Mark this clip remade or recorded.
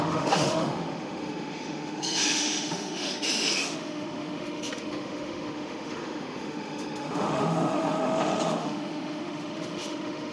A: remade